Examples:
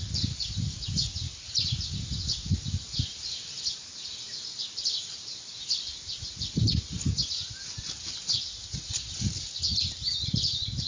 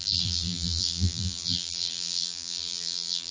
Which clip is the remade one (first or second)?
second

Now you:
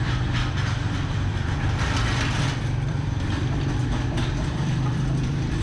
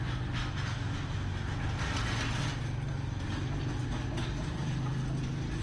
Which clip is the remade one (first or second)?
first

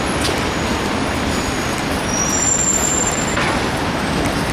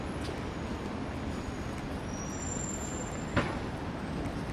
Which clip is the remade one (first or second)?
first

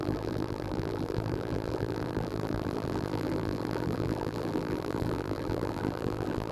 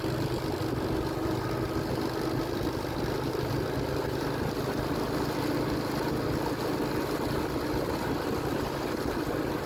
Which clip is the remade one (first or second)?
first